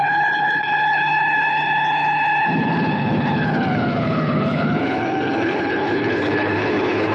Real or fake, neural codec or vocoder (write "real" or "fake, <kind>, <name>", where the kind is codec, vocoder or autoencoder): fake, codec, HILCodec